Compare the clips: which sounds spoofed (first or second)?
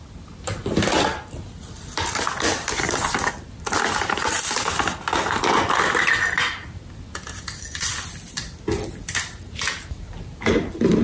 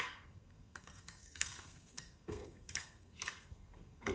second